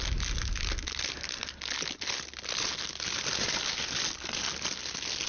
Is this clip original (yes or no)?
yes